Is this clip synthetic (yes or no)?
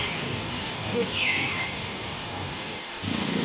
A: yes